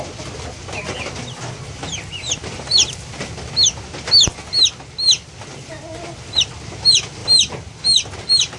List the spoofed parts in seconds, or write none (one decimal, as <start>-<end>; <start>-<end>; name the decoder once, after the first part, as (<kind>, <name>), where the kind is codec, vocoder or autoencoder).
none